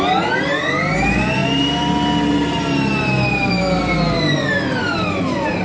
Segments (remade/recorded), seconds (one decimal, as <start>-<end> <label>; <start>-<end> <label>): 0.0-5.6 recorded